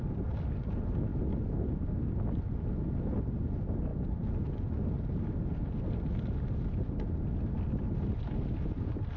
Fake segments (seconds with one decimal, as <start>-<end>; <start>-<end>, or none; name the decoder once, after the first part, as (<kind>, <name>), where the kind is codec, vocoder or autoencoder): none